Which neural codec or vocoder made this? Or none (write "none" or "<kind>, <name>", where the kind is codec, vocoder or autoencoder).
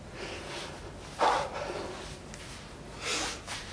none